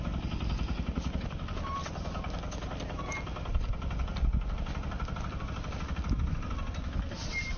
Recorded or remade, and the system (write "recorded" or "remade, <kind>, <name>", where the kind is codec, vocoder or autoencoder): recorded